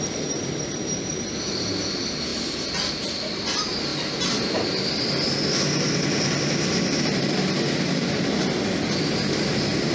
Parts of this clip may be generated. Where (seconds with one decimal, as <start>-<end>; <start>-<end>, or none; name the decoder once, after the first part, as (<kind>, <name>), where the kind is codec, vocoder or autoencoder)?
1.1-1.8 (vocoder, BigVGAN v2)